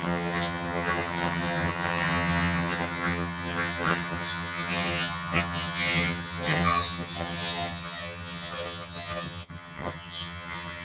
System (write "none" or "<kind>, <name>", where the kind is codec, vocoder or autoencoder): vocoder, HiFi-GAN